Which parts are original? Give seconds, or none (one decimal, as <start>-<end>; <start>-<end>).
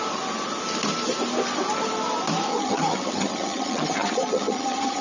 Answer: 0.0-2.5